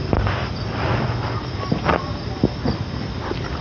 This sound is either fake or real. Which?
real